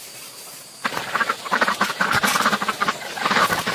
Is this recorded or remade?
remade